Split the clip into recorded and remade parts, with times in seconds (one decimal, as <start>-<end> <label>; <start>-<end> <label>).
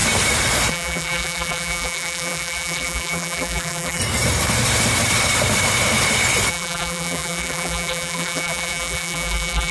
0.0-0.7 recorded; 0.7-4.0 remade; 4.0-6.5 recorded; 6.5-9.7 remade